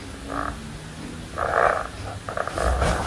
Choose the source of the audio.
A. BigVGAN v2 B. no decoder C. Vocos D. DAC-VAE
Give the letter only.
B